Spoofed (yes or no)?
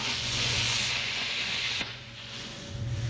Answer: yes